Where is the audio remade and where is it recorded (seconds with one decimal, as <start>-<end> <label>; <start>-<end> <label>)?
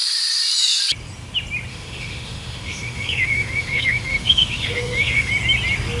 0.0-1.7 recorded; 1.7-5.3 remade; 5.3-6.0 recorded